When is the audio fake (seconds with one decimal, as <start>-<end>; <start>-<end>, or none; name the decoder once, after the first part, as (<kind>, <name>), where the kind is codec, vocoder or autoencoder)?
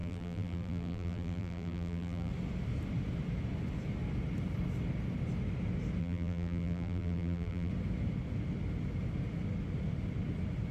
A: 0.0-2.3 (vocoder, BigVGAN v2); 6.0-7.7